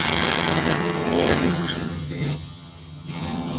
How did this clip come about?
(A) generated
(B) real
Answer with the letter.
A